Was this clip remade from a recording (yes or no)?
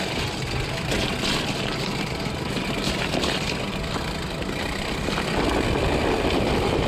no